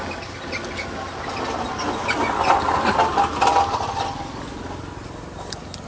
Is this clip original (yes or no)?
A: yes